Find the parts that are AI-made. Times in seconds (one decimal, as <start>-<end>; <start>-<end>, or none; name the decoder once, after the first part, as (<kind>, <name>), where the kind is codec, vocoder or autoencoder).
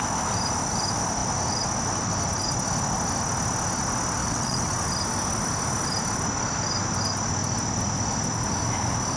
4.2-4.7 (vocoder, WaveNeXt)